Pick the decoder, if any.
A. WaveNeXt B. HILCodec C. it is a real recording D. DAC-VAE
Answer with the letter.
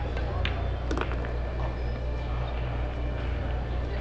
C